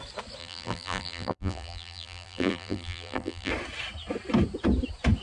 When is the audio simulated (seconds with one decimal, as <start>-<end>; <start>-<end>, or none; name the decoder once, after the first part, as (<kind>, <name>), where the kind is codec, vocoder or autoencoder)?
0.4-3.5 (vocoder, BigVGAN v2)